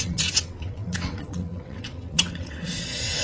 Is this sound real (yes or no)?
no